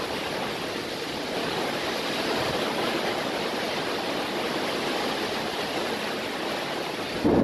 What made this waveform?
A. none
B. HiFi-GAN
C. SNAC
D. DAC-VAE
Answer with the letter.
A